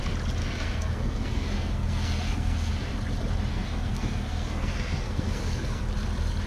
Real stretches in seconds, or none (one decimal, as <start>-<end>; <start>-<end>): 0.0-0.4; 2.7-3.5; 5.8-6.5